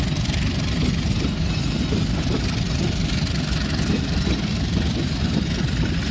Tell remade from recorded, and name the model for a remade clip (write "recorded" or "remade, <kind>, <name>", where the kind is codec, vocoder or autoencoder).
recorded